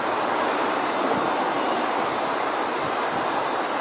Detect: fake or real real